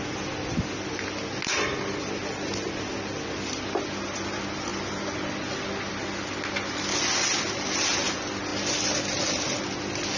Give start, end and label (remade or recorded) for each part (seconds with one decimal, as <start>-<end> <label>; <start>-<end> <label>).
0.0-10.2 recorded